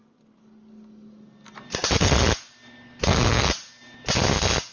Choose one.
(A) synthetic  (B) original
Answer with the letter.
B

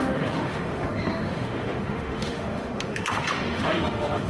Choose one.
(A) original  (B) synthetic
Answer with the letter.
B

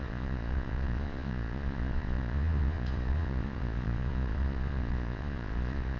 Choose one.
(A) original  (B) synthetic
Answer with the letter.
B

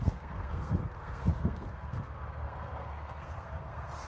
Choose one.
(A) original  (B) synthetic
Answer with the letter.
B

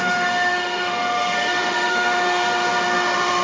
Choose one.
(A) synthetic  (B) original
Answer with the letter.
A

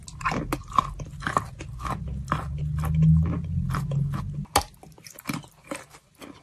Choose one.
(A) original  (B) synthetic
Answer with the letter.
A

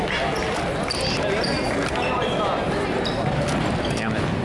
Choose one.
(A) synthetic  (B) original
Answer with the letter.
B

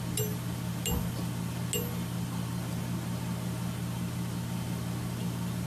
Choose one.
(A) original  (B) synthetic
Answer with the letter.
A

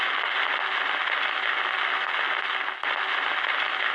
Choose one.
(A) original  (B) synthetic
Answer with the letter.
A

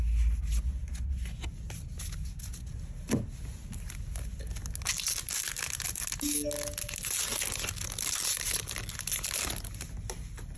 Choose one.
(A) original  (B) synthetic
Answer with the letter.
A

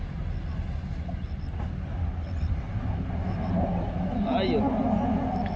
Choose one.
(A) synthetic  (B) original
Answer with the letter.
B